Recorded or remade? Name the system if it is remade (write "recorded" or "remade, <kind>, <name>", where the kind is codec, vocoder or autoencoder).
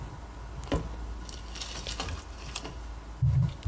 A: recorded